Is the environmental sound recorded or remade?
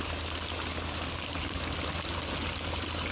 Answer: recorded